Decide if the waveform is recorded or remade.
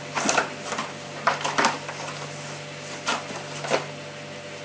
recorded